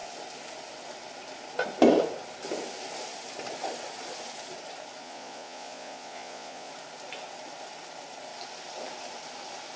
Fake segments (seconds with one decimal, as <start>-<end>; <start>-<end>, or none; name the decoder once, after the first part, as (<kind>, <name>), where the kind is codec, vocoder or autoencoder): 5.0-6.7 (vocoder, Vocos)